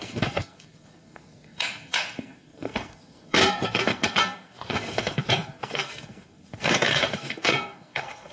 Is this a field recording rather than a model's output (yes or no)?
no